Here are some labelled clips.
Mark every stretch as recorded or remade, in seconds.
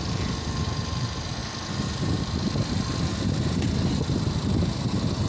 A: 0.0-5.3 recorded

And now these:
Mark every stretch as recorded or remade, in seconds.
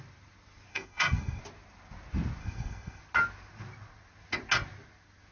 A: 0.0-0.7 recorded; 0.7-1.4 remade; 1.4-2.4 recorded; 2.4-3.0 remade; 3.0-5.3 recorded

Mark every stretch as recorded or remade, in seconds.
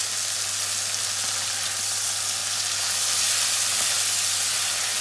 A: 0.0-5.0 recorded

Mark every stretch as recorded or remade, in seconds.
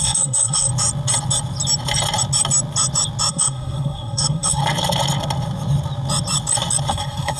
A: 0.0-0.7 remade; 0.7-3.3 recorded; 3.3-4.6 remade; 4.6-6.9 recorded; 6.9-7.4 remade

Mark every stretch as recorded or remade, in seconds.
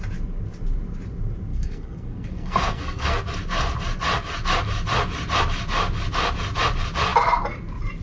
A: 0.0-1.5 recorded; 1.5-3.2 remade; 3.2-8.0 recorded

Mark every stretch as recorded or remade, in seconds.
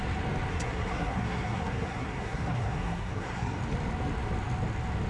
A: 0.0-0.5 recorded; 0.5-3.6 remade; 3.6-5.1 recorded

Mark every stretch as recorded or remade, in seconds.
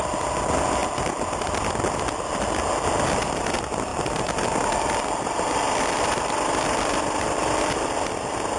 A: 0.0-8.6 recorded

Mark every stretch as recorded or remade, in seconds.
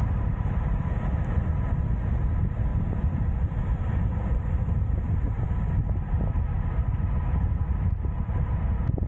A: 0.0-9.1 recorded